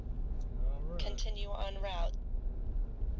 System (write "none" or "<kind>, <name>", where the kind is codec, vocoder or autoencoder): none